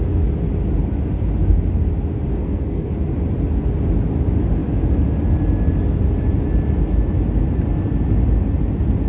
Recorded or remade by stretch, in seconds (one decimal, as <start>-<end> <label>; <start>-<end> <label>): 0.0-2.3 recorded; 2.3-2.9 remade; 2.9-9.1 recorded